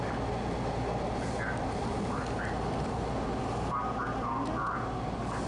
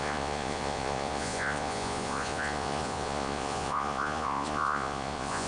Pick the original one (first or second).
first